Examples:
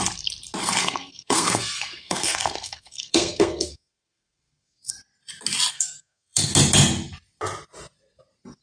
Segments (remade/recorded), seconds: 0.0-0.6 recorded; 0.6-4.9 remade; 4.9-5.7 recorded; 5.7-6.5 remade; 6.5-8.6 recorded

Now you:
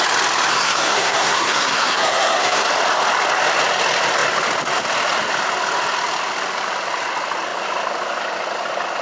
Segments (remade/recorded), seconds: 0.0-0.5 recorded; 0.5-2.7 remade; 2.7-9.0 recorded